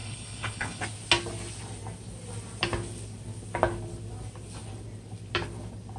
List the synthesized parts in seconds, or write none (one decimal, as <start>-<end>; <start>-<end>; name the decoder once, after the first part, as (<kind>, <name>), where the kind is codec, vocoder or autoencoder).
0.0-0.8 (codec, HILCodec)